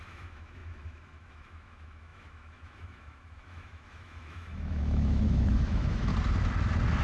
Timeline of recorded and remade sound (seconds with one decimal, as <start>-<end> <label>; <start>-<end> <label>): 0.0-6.1 remade; 6.1-7.0 recorded